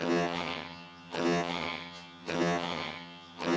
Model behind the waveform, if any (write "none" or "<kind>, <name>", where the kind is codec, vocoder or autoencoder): vocoder, HiFi-GAN